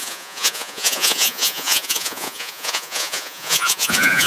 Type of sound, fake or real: fake